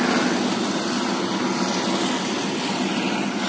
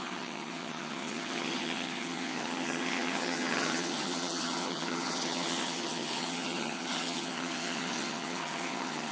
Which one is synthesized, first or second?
second